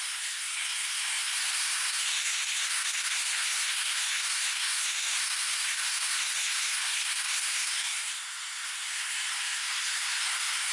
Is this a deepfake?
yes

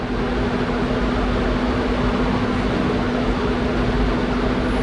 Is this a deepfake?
no